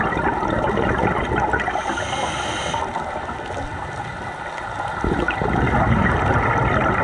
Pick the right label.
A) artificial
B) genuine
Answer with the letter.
B